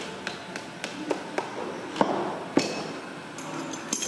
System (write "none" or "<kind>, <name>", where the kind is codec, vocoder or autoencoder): none